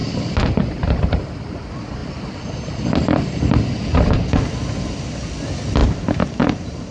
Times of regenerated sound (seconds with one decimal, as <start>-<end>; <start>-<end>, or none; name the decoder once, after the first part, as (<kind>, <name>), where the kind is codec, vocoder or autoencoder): 5.8-6.9 (vocoder, BigVGAN v2)